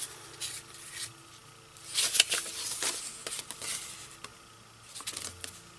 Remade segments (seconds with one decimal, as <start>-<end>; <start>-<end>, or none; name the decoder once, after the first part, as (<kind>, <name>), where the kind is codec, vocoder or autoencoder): none